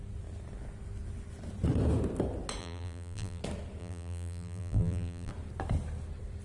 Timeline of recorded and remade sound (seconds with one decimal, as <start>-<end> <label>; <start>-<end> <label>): 0.0-2.6 recorded; 2.6-3.4 remade; 3.4-3.8 recorded; 3.8-5.3 remade; 5.3-6.4 recorded